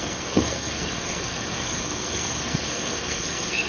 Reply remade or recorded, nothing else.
remade